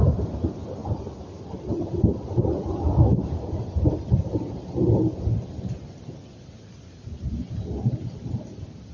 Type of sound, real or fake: real